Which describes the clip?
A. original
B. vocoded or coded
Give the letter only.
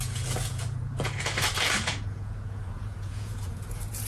B